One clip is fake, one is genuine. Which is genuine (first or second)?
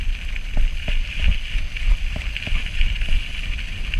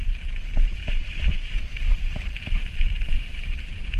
first